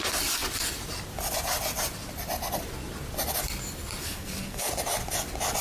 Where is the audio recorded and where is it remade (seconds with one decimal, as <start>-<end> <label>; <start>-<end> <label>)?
0.0-4.0 recorded; 4.0-4.7 remade; 4.7-5.6 recorded

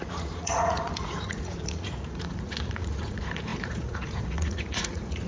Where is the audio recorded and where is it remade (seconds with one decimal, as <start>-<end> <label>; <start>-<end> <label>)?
0.0-5.3 remade

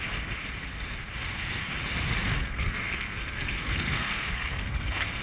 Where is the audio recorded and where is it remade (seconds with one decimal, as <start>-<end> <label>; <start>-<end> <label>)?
0.0-2.4 recorded; 2.4-5.2 remade

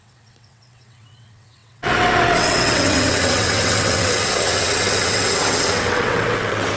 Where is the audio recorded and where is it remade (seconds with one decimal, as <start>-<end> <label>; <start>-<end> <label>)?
0.0-6.8 remade

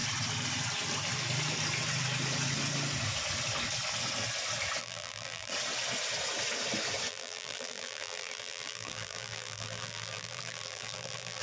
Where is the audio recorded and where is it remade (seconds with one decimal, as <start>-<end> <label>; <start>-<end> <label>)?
0.0-4.8 recorded; 4.8-5.5 remade; 5.5-7.1 recorded; 7.1-11.4 remade

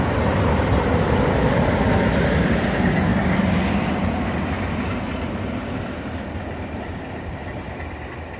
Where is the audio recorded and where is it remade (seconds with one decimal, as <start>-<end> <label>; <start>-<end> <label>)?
0.0-8.4 recorded

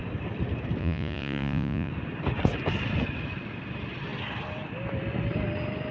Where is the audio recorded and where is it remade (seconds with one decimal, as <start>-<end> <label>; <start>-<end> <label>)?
0.0-0.8 recorded; 0.8-1.9 remade; 1.9-5.9 recorded